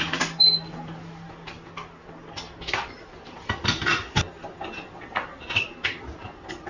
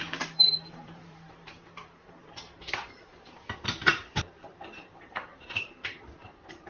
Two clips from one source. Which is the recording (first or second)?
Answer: first